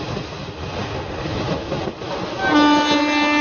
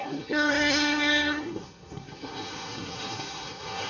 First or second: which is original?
first